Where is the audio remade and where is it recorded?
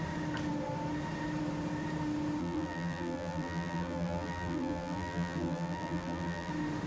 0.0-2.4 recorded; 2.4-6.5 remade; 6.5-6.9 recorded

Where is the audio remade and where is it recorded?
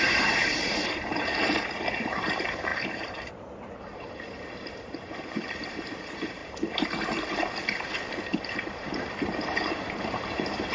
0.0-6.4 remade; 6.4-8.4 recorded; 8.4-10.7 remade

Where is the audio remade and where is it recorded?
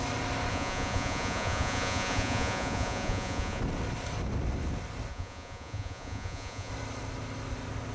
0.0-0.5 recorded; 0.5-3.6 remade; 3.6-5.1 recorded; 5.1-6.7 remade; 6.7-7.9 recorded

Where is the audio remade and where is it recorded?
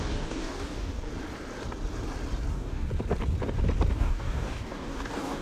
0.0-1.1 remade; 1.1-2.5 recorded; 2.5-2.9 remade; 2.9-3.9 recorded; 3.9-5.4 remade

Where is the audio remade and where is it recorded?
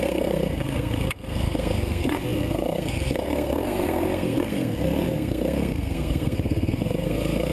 0.0-7.5 remade